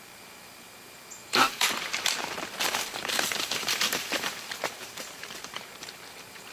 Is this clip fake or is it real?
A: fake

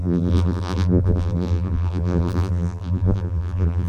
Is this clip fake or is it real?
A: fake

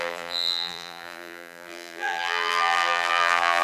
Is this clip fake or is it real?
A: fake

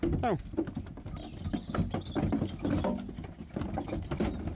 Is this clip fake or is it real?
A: real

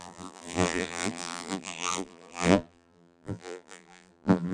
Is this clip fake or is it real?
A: fake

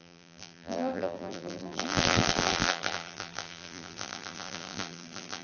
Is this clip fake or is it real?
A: fake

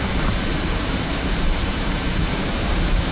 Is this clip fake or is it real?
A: fake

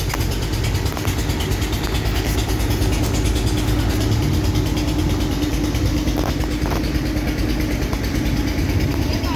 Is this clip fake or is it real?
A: real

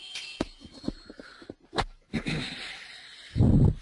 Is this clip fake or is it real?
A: real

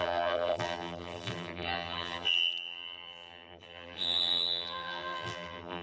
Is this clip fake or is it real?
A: fake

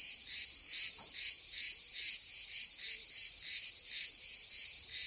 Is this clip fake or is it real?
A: fake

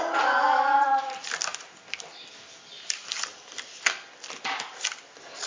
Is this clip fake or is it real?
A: fake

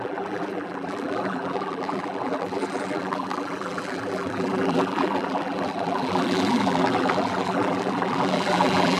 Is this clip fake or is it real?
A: fake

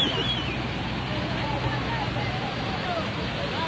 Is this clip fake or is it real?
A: real